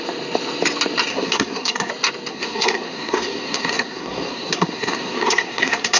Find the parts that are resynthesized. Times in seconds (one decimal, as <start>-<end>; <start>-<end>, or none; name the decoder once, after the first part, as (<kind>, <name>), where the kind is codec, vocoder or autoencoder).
1.1-1.9 (codec, SNAC); 2.3-6.0